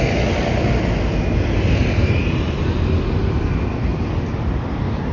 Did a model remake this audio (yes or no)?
no